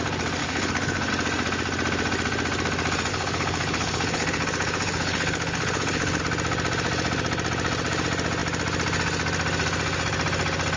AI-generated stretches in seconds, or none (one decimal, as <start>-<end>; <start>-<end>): 0.4-1.1; 3.1-6.2